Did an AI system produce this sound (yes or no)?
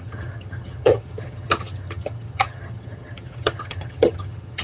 yes